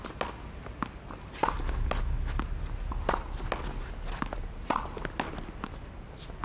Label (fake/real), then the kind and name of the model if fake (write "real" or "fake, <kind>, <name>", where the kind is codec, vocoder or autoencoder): real